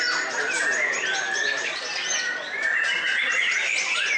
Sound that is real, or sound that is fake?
real